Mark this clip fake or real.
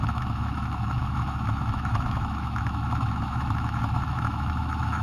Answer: fake